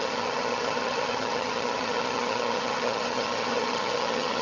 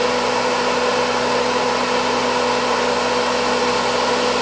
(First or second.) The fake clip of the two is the first